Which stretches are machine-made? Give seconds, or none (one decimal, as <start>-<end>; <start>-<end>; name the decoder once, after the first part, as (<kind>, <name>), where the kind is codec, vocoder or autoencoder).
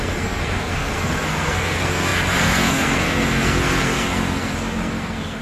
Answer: 0.0-5.4 (codec, SNAC)